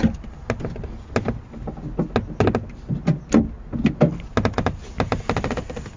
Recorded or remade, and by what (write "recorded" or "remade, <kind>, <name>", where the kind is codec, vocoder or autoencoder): recorded